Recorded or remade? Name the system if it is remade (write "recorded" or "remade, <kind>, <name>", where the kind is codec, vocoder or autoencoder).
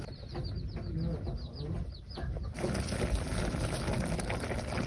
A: recorded